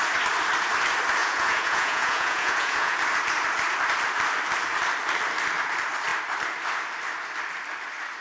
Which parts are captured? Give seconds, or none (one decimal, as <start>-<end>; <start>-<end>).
0.0-1.2; 3.0-8.2